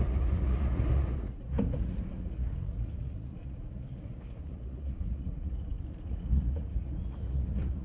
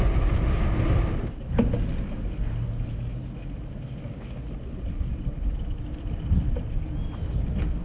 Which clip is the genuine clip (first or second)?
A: second